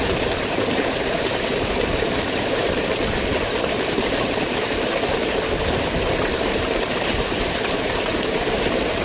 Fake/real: fake